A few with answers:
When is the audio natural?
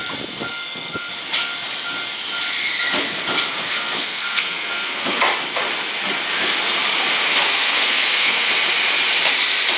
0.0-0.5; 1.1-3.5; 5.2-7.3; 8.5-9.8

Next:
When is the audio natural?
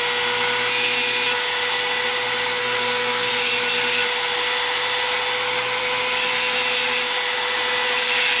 0.0-2.6; 3.3-8.4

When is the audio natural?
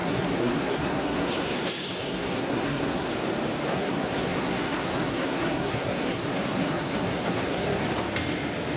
3.1-3.7; 7.8-8.8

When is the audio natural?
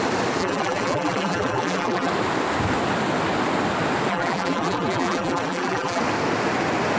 0.0-0.4; 2.1-4.1; 6.0-7.0